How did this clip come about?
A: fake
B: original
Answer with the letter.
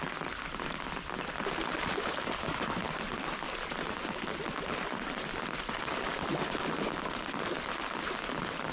B